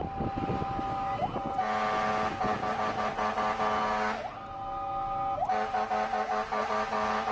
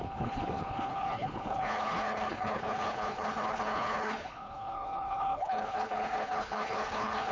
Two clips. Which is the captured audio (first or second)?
first